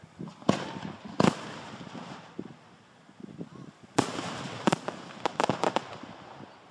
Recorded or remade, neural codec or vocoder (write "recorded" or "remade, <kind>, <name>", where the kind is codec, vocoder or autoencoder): recorded